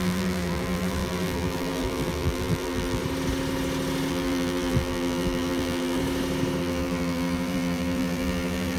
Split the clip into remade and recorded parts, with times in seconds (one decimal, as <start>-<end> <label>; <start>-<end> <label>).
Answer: 0.0-3.0 remade; 3.0-4.1 recorded; 4.1-6.0 remade; 6.0-6.6 recorded; 6.6-8.8 remade